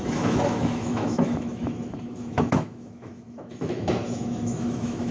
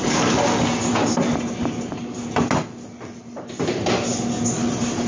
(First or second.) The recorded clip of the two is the second